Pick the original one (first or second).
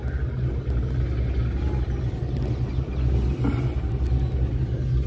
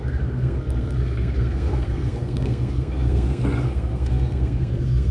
first